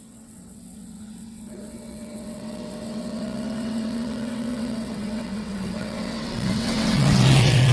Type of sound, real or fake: fake